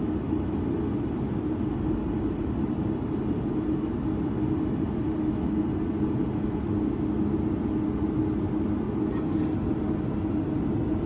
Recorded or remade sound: recorded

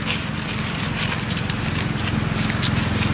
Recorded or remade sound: recorded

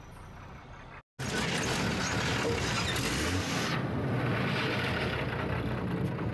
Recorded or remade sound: recorded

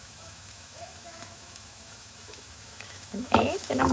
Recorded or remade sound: remade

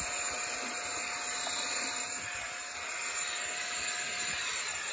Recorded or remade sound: recorded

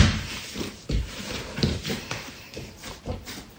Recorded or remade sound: remade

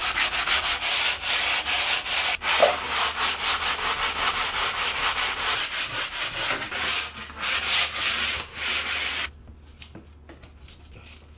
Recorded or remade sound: recorded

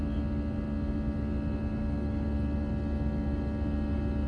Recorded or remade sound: recorded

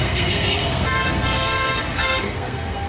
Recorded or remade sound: remade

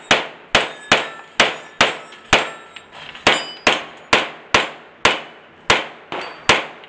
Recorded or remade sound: recorded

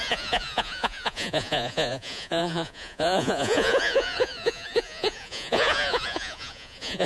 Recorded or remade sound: remade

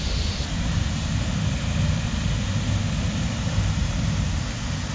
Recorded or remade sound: recorded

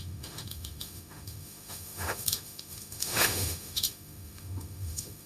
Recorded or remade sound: remade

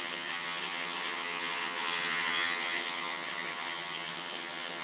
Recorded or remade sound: remade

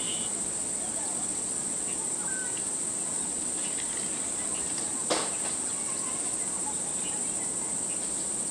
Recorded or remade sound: recorded